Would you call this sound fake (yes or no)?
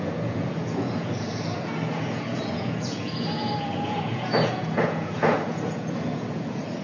yes